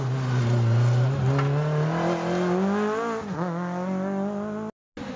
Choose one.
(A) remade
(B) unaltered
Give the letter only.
B